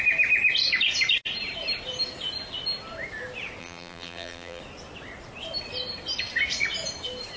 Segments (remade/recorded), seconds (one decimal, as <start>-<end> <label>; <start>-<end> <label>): 0.0-3.6 recorded; 3.6-4.6 remade; 4.6-7.4 recorded